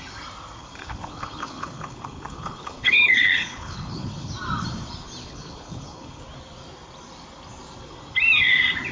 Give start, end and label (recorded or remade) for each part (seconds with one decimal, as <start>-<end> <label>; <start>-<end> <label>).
0.0-0.6 recorded; 0.6-4.3 remade; 4.3-5.2 recorded; 5.2-6.2 remade; 6.2-8.9 recorded